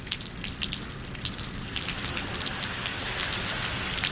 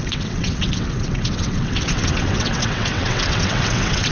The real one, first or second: first